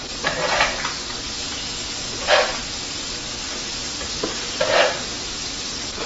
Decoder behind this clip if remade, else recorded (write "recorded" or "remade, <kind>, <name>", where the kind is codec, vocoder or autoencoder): recorded